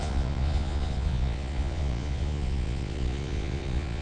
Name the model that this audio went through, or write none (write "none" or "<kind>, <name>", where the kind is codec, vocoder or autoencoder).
vocoder, Vocos